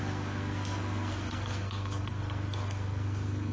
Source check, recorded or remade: remade